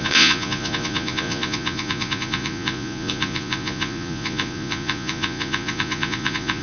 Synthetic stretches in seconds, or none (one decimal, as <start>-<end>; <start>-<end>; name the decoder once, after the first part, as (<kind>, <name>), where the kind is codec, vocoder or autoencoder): 0.0-6.6 (vocoder, Vocos)